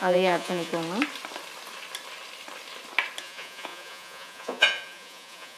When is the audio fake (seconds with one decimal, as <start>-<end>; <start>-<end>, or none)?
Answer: 0.0-0.7; 3.2-5.6

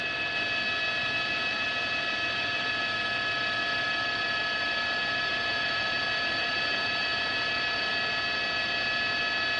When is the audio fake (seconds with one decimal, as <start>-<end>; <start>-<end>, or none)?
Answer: 1.0-2.7; 5.3-7.9

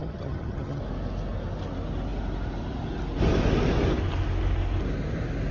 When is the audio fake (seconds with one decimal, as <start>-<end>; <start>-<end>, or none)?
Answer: 0.0-0.8

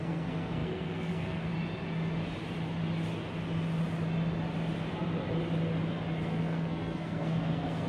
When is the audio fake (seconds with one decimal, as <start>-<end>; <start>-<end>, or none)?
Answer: 0.0-1.5; 6.2-7.9